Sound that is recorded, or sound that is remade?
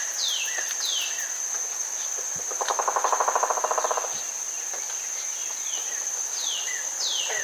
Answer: recorded